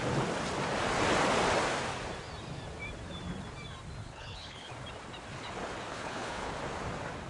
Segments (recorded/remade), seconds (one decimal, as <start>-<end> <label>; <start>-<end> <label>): 0.0-4.0 recorded; 4.0-4.7 remade; 4.7-5.9 recorded; 5.9-6.5 remade; 6.5-7.3 recorded